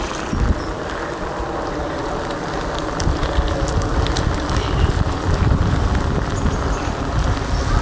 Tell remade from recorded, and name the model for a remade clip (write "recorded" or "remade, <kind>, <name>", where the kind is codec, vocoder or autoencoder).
recorded